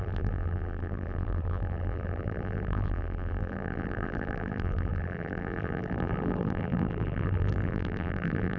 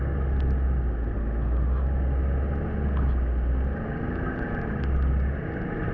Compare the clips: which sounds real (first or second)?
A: second